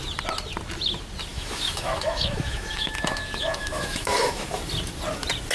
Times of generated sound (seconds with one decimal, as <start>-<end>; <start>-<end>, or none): 1.3-4.6

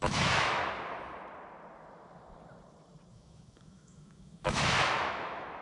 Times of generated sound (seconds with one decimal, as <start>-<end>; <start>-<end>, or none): 0.0-0.6; 3.1-5.6

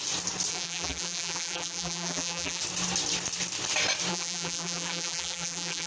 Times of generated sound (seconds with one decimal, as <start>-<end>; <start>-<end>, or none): 0.5-2.6; 4.1-5.9

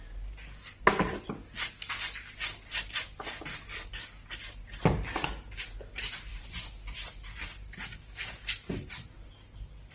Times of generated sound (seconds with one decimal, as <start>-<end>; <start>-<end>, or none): none